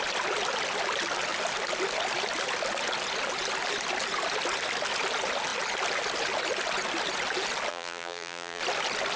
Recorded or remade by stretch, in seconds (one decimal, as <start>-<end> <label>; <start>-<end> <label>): 0.0-7.7 recorded; 7.7-8.6 remade; 8.6-9.2 recorded